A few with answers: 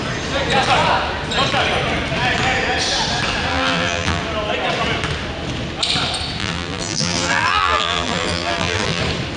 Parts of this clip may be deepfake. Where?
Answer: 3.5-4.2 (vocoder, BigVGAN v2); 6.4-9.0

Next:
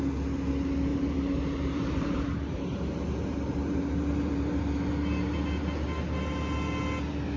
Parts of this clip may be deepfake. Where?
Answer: 0.9-4.9 (vocoder, BigVGAN v2)